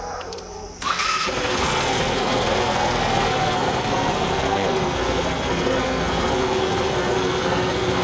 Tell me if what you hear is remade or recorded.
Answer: remade